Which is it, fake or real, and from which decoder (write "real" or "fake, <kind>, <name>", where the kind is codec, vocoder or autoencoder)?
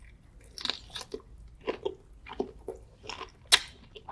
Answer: real